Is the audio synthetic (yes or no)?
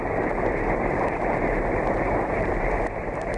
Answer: yes